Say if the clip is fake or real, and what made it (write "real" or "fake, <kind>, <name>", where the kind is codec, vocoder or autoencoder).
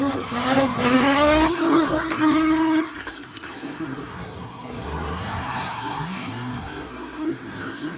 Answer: fake, codec, SNAC